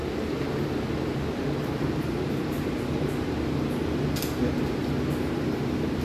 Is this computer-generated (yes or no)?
no